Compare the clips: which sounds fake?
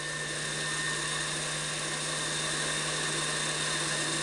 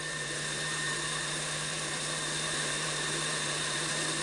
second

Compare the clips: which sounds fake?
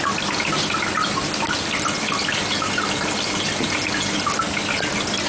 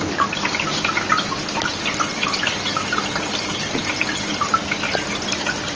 second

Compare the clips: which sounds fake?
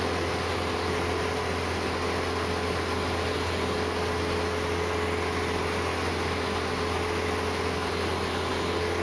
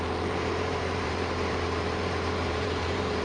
second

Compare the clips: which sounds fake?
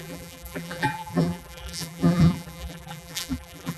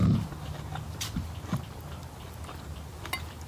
first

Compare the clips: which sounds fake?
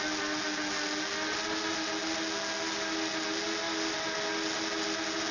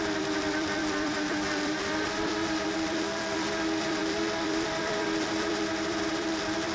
second